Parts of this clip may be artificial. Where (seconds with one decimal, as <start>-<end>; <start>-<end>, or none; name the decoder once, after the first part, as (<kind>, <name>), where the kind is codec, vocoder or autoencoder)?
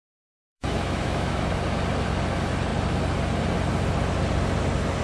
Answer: 0.0-1.4 (autoencoder, DAC-VAE)